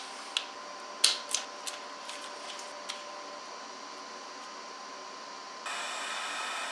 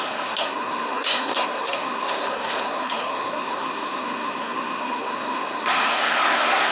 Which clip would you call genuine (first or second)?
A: first